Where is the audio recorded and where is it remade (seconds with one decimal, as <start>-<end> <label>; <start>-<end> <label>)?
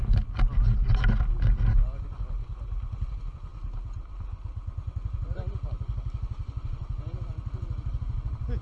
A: 0.0-8.6 recorded